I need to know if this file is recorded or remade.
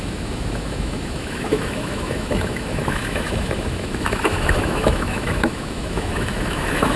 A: remade